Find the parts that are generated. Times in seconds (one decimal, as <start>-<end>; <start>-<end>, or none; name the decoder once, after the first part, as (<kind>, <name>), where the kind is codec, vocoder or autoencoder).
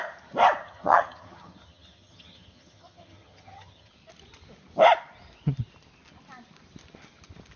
0.6-3.9 (vocoder, HiFi-GAN)